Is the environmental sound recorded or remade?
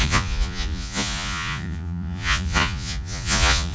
remade